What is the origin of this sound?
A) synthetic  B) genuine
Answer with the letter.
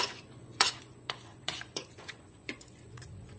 A